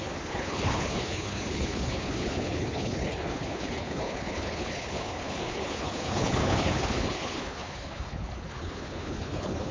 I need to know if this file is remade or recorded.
remade